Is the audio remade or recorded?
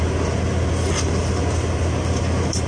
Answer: recorded